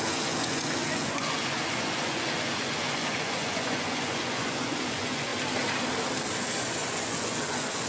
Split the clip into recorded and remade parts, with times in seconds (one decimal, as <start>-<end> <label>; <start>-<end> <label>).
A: 0.0-5.3 remade; 5.3-6.5 recorded; 6.5-7.9 remade

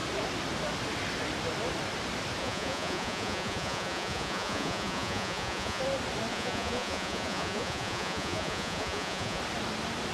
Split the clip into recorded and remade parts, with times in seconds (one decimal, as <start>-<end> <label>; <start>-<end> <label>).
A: 0.0-2.4 recorded; 2.4-5.8 remade; 5.8-6.3 recorded; 6.3-9.4 remade; 9.4-10.1 recorded